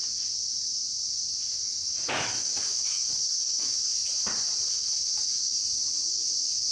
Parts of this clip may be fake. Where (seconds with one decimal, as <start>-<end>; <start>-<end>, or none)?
1.5-4.0; 4.7-5.6; 6.1-6.7